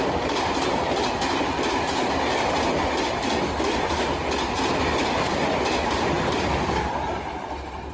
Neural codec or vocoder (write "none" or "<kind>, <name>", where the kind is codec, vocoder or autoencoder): none